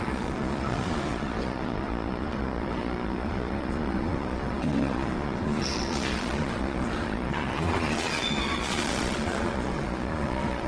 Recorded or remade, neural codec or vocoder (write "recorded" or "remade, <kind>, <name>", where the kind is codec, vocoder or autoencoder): remade, vocoder, Vocos